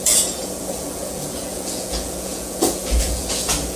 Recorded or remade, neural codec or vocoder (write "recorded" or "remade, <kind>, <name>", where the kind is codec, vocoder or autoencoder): remade, vocoder, Vocos